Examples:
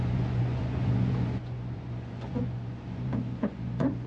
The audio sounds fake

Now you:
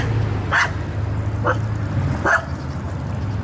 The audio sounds real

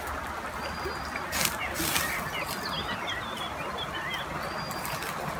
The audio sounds real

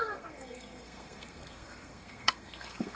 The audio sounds fake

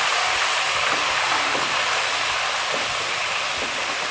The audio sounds fake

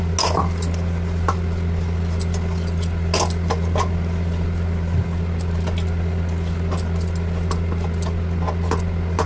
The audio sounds real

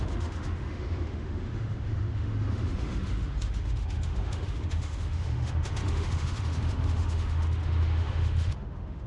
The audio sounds fake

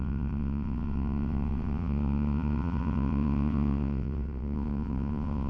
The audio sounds fake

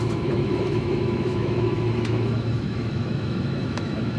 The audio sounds fake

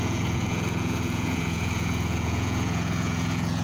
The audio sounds fake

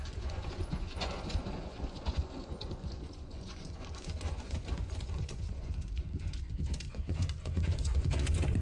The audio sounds fake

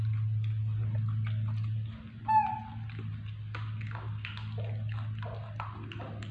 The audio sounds real